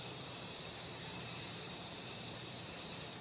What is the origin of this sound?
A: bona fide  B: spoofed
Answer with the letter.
B